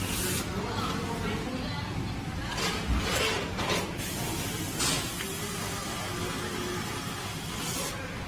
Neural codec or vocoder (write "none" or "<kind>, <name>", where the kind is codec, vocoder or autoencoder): none